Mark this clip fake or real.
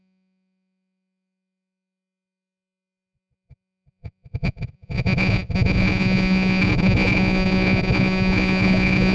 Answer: fake